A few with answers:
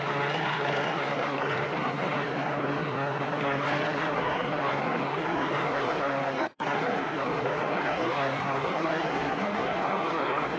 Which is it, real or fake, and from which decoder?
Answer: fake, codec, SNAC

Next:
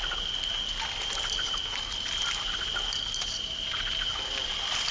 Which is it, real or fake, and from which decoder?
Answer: fake, vocoder, BigVGAN v2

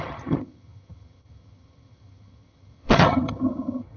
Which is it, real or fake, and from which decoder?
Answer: fake, vocoder, HiFi-GAN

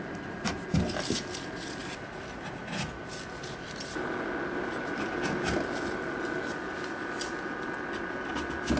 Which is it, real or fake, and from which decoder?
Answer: real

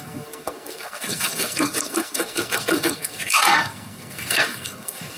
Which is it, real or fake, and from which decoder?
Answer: fake, codec, SNAC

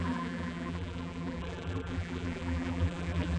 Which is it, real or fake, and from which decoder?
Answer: fake, vocoder, BigVGAN v2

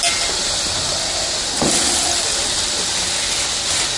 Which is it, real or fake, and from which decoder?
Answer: real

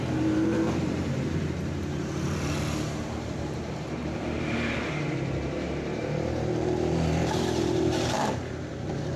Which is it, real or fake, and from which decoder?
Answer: fake, vocoder, BigVGAN v2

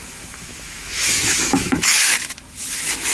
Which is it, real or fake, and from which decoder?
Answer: fake, autoencoder, DAC-VAE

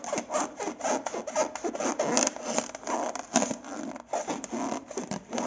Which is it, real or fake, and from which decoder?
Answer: real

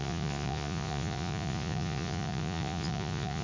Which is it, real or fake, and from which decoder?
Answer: fake, vocoder, Vocos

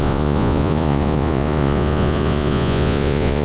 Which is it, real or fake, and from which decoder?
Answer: fake, vocoder, Vocos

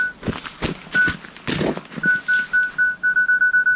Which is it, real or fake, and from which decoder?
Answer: real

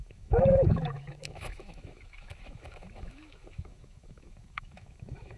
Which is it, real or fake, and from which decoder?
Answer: fake, autoencoder, DAC-VAE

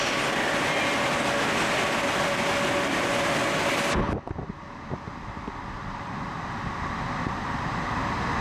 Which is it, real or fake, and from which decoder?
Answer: real